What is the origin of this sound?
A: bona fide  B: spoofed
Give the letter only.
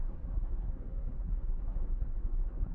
B